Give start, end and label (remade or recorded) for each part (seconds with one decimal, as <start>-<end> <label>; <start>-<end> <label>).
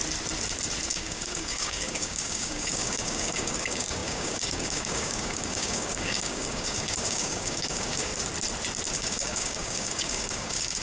0.0-0.9 recorded; 0.9-8.1 remade; 8.1-8.9 recorded; 8.9-10.8 remade